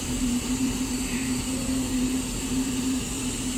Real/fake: fake